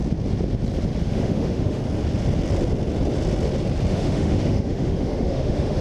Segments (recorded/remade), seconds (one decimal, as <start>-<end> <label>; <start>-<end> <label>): 0.0-1.0 recorded; 1.0-1.8 remade; 1.8-3.9 recorded; 3.9-5.8 remade